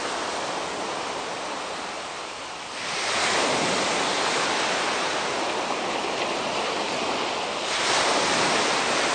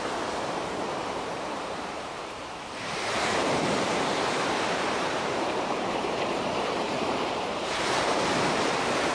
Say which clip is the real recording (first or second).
first